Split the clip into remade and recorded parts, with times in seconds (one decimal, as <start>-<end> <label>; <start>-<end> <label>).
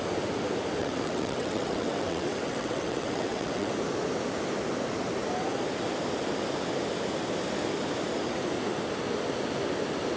0.0-0.8 recorded; 0.8-3.7 remade; 3.7-10.2 recorded